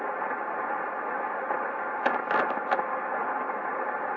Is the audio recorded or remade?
recorded